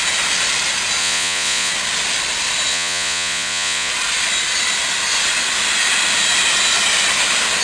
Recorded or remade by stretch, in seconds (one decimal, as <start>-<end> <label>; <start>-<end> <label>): 0.0-1.0 recorded; 1.0-1.7 remade; 1.7-2.7 recorded; 2.7-3.9 remade; 3.9-7.6 recorded